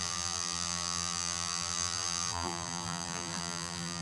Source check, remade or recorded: remade